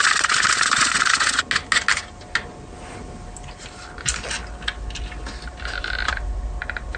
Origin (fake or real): real